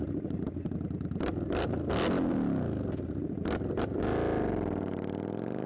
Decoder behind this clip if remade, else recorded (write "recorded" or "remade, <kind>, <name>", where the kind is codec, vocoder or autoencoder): recorded